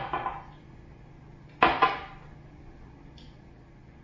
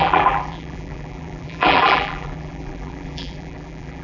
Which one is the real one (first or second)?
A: first